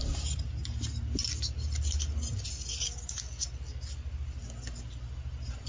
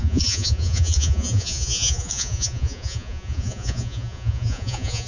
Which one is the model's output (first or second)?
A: second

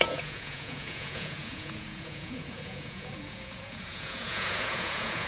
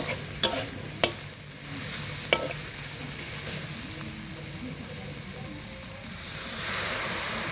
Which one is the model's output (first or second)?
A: first